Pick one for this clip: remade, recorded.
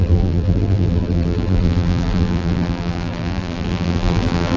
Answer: remade